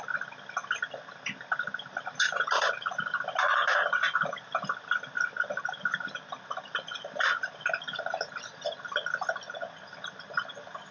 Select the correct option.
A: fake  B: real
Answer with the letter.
B